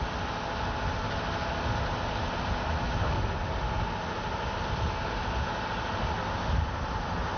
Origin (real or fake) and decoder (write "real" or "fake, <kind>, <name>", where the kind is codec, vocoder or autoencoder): real